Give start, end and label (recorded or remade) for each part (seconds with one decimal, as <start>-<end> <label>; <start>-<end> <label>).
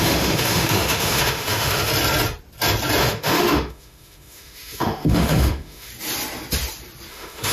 0.0-1.9 remade; 1.9-3.0 recorded; 3.0-5.9 remade; 5.9-7.1 recorded; 7.1-7.5 remade